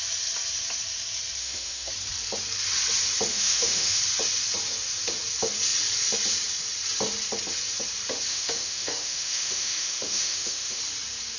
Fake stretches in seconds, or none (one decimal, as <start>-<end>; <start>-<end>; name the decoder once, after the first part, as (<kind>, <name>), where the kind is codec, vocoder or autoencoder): 1.4-1.9 (autoencoder, DAC-VAE); 3.3-4.0; 8.3-10.8